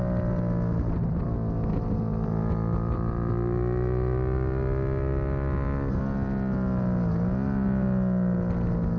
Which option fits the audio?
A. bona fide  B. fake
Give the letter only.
A